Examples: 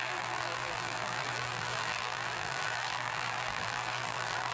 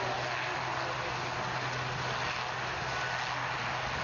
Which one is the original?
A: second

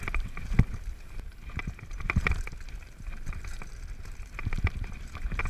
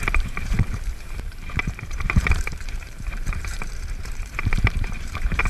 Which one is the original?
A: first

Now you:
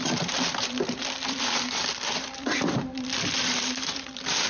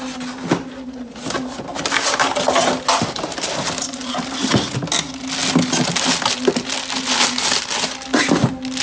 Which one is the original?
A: second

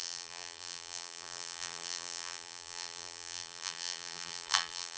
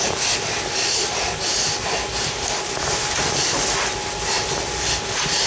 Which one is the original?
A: second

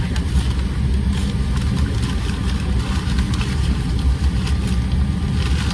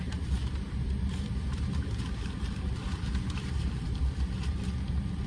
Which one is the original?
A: first